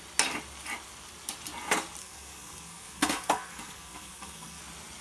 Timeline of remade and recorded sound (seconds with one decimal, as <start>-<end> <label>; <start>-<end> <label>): 0.0-2.0 recorded; 2.0-4.6 remade; 4.6-5.0 recorded